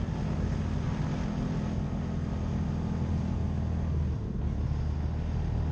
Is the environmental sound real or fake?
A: real